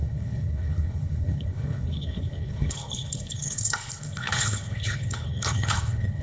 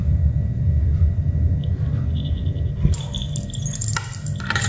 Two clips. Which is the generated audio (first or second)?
first